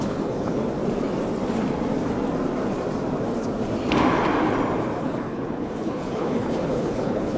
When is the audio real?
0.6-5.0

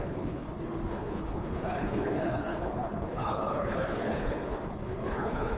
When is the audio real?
none

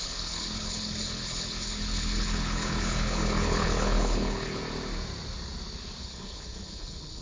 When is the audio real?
4.6-6.0

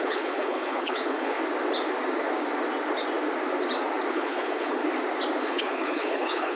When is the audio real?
1.4-4.1; 4.8-5.4